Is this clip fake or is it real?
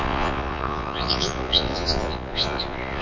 fake